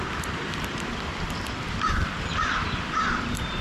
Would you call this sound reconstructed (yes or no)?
yes